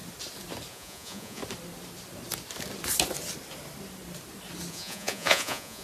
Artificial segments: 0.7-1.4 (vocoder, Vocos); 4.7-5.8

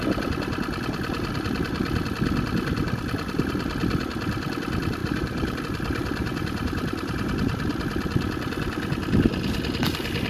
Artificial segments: 5.0-5.6 (vocoder, BigVGAN v2); 6.0-7.3